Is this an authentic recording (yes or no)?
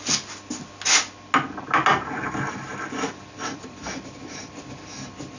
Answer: yes